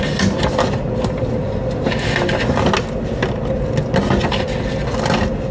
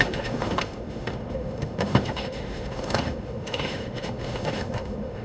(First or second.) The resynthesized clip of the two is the second